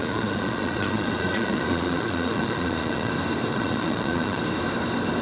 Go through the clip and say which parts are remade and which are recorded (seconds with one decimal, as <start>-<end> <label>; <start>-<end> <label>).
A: 0.0-3.1 remade; 3.1-3.5 recorded; 3.5-4.4 remade; 4.4-5.2 recorded